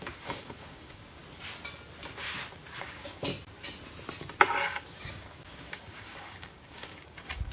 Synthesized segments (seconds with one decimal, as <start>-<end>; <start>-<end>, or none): 0.0-1.2; 2.8-3.3; 4.5-7.5